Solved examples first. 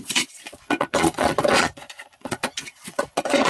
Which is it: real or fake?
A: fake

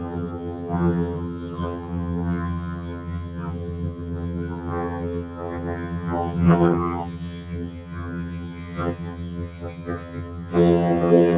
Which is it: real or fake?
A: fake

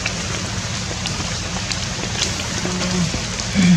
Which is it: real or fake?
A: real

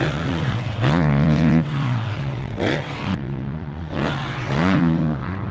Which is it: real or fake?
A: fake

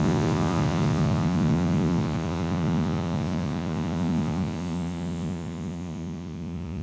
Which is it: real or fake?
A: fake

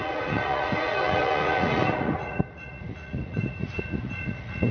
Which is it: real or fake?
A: fake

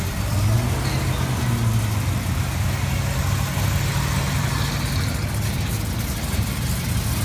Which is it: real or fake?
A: real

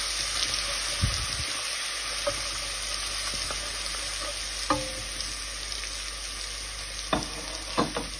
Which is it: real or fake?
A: real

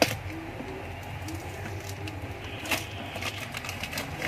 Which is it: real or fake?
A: real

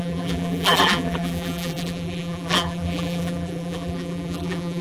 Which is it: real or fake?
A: fake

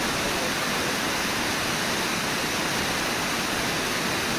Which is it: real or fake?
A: fake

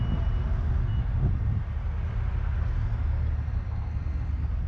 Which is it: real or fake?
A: real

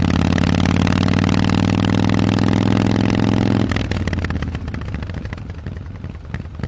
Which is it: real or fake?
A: real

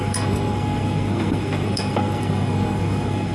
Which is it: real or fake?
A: fake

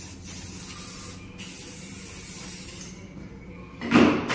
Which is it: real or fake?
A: real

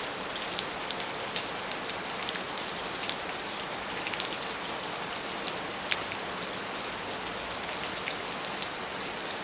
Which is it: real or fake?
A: real